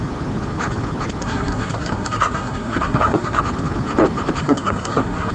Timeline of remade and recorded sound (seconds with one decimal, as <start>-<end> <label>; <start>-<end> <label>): 0.0-1.2 recorded; 1.2-3.4 remade; 3.4-4.4 recorded; 4.4-5.3 remade

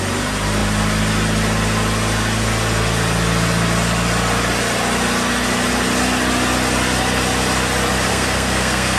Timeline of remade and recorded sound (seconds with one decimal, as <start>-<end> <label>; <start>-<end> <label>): 0.0-8.1 recorded; 8.1-9.0 remade

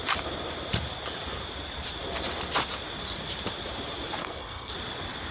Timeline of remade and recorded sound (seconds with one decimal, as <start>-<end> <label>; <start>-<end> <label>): 0.0-4.2 recorded; 4.2-4.7 remade; 4.7-5.3 recorded

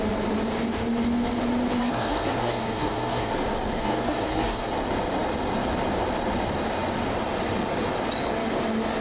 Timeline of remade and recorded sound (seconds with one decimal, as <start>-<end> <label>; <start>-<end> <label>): 0.0-1.8 recorded; 1.8-3.3 remade; 3.3-3.8 recorded; 3.8-4.7 remade; 4.7-9.0 recorded